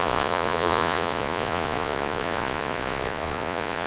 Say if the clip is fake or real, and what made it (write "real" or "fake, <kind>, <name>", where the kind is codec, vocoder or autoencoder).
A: fake, vocoder, Vocos